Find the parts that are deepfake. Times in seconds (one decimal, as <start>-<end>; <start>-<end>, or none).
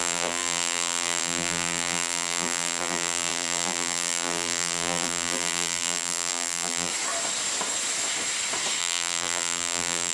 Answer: 0.0-6.9; 8.8-10.1